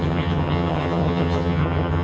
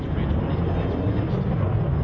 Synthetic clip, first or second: first